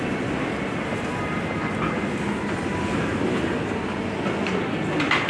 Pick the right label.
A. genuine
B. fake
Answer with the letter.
A